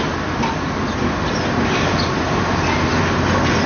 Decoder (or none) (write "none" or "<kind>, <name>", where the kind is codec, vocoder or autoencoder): none